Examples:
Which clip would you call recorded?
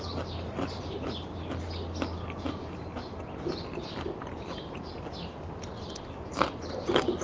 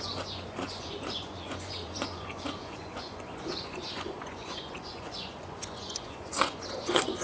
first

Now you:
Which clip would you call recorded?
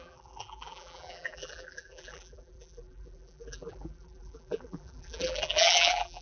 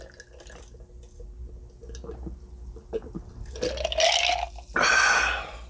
second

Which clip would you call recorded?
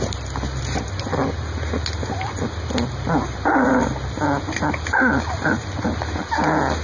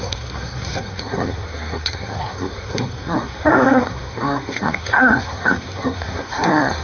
first